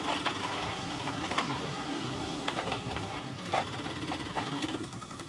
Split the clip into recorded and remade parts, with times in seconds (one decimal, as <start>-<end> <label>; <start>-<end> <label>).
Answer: 0.0-0.4 recorded; 0.4-3.6 remade; 3.6-4.3 recorded; 4.3-5.3 remade